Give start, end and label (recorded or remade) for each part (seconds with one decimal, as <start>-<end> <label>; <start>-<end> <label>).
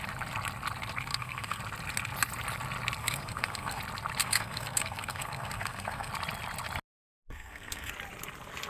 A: 0.0-1.1 recorded; 1.1-1.6 remade; 1.6-3.0 recorded; 3.0-3.8 remade; 3.8-4.2 recorded; 4.2-6.1 remade; 6.1-7.0 recorded; 7.0-7.9 remade; 7.9-8.7 recorded